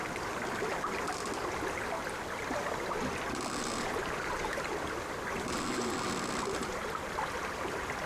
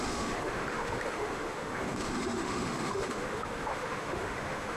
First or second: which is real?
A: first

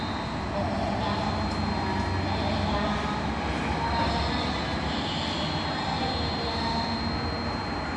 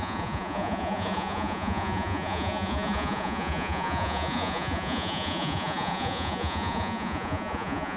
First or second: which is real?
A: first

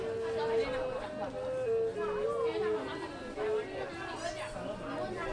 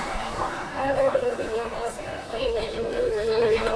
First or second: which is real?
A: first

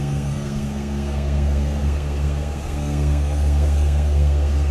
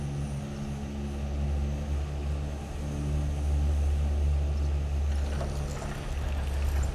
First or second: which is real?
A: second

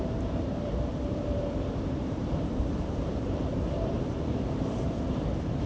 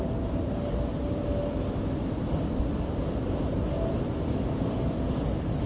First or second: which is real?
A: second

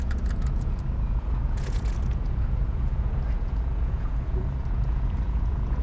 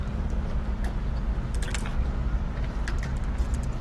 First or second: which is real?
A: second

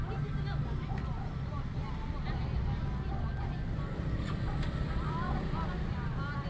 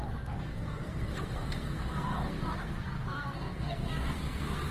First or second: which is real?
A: first